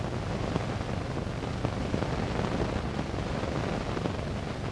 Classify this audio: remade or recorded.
recorded